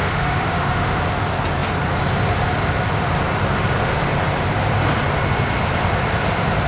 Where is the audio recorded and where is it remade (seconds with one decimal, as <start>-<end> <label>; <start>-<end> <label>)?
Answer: 0.0-1.0 remade; 1.0-6.7 recorded